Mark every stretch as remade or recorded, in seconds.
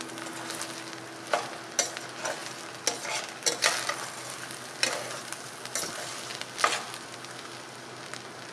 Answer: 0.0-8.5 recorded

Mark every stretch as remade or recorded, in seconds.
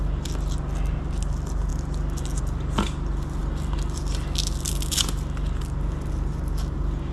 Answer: 0.0-7.1 recorded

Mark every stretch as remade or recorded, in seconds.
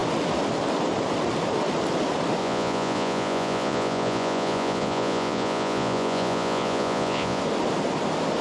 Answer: 0.0-2.4 recorded; 2.4-7.4 remade; 7.4-8.4 recorded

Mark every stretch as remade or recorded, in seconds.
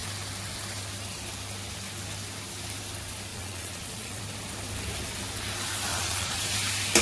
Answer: 0.0-3.3 recorded; 3.3-4.2 remade; 4.2-5.9 recorded; 5.9-6.4 remade; 6.4-7.0 recorded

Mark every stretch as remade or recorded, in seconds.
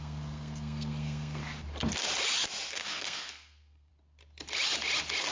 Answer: 0.0-1.4 remade; 1.4-2.7 recorded; 2.7-3.9 remade; 3.9-5.3 recorded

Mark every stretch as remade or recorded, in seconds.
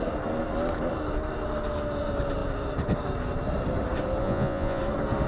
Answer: 0.0-4.2 recorded; 4.2-4.8 remade; 4.8-5.3 recorded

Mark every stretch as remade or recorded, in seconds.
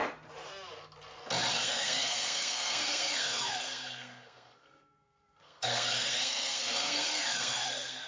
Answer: 0.0-1.5 recorded; 1.5-8.1 remade